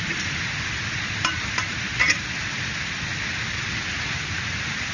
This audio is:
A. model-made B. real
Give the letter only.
B